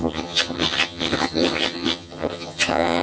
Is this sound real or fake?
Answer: fake